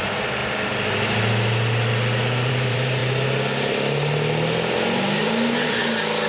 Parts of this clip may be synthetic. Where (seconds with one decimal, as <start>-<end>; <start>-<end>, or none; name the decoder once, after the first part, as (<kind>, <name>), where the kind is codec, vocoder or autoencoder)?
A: 0.0-0.4 (vocoder, BigVGAN v2); 2.5-3.0

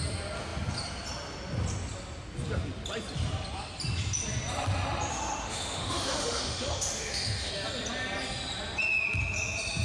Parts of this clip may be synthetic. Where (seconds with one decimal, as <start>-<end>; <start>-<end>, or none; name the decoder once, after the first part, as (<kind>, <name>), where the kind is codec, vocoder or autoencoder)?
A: 5.1-7.5 (autoencoder, DAC-VAE)

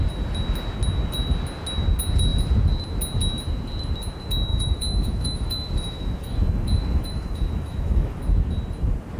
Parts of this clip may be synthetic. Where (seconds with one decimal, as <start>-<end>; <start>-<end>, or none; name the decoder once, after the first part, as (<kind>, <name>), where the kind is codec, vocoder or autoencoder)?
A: 4.5-8.2 (autoencoder, DAC-VAE)

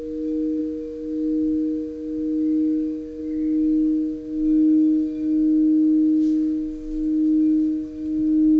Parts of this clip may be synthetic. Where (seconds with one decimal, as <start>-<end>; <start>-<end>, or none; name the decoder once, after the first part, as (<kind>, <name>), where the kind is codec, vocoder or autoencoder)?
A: none

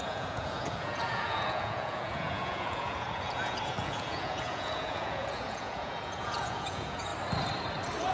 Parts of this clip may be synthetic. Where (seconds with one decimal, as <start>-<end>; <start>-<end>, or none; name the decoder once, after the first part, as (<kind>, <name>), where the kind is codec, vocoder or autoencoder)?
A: 0.0-7.1 (vocoder, Vocos)